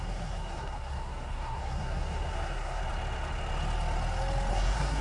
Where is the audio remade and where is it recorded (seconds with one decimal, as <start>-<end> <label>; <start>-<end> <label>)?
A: 0.0-2.8 remade; 2.8-4.5 recorded; 4.5-5.0 remade